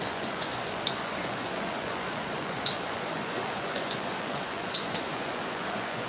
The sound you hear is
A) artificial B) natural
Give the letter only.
A